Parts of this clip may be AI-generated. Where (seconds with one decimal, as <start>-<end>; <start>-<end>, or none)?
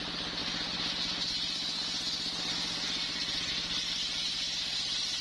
none